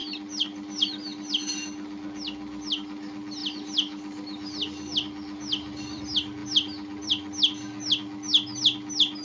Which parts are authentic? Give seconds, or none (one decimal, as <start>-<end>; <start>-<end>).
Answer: 1.3-3.4; 6.0-6.4; 7.1-9.2